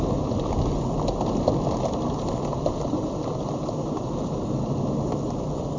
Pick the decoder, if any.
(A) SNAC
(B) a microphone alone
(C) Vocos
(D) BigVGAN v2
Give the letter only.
B